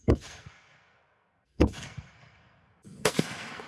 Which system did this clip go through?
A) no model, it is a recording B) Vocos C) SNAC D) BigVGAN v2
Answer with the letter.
C